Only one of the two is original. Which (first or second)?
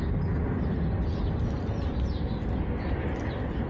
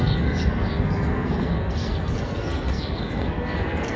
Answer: first